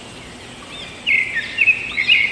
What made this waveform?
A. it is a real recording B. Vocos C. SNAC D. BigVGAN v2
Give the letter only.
A